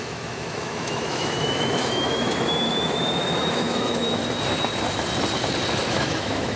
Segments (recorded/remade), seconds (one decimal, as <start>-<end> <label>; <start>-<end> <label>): 0.0-4.2 remade; 4.2-5.9 recorded; 5.9-6.6 remade